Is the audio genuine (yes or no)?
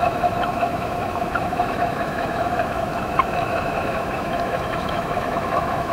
no